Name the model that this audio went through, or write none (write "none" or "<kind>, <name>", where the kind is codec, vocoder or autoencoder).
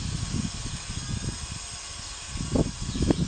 none